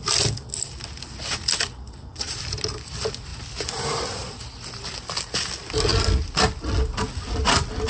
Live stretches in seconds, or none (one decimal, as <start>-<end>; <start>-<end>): 0.0-7.9